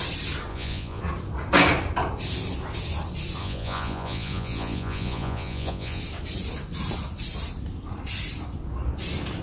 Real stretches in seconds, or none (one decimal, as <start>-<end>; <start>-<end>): 0.0-0.5; 1.0-3.4; 6.0-9.4

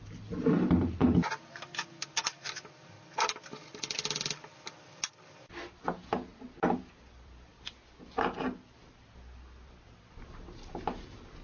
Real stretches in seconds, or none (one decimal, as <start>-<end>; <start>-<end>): 1.0-5.5; 7.5-9.9

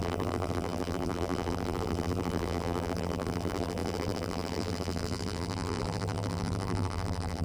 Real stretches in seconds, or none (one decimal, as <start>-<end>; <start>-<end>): none

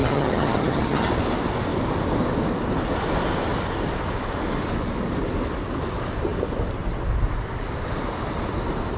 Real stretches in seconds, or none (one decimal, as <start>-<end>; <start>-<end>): 1.1-9.0

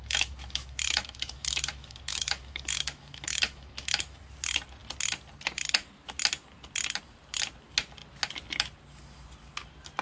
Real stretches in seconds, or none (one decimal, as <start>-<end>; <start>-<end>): 4.2-10.0

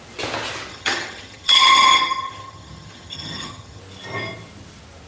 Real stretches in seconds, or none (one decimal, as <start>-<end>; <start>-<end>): 0.0-0.7; 3.8-5.1

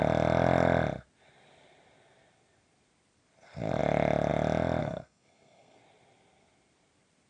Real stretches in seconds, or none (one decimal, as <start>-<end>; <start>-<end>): 0.0-4.8; 5.8-7.3